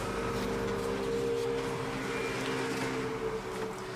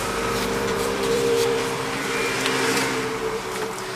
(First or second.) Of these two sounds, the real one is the first